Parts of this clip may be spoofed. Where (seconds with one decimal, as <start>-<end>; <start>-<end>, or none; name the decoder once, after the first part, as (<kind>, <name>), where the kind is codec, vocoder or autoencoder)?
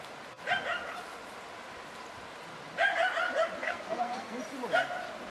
3.6-4.4 (codec, SNAC)